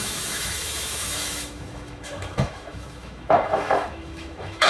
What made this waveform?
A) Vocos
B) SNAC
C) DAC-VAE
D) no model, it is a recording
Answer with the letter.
C